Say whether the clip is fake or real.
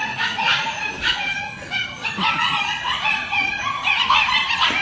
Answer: fake